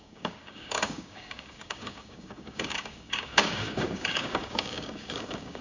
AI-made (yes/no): yes